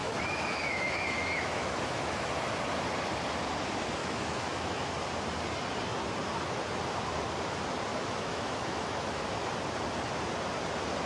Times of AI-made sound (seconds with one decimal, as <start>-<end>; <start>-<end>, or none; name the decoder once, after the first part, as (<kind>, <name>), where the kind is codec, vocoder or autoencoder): 0.0-2.3 (autoencoder, DAC-VAE); 4.0-4.9; 7.9-9.2